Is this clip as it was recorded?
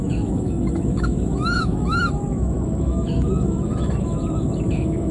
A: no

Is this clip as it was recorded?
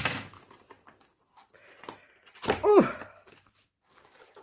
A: yes